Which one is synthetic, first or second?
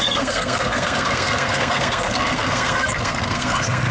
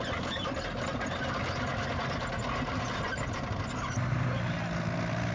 first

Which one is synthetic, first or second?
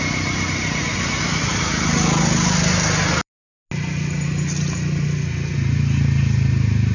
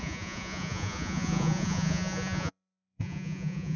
second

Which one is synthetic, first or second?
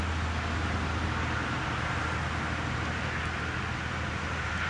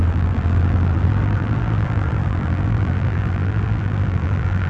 second